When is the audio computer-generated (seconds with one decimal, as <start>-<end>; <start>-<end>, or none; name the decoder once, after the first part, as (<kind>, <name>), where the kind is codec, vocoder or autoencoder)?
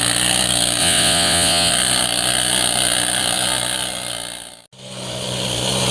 0.8-1.7 (vocoder, WaveNeXt)